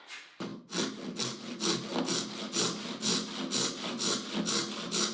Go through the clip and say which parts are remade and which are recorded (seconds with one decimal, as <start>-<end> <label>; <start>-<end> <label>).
0.0-5.1 recorded